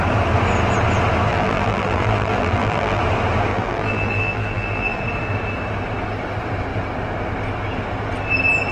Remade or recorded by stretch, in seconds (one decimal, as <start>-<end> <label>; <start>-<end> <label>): 0.0-1.3 recorded; 1.3-3.0 remade; 3.0-3.5 recorded; 3.5-5.0 remade; 5.0-8.7 recorded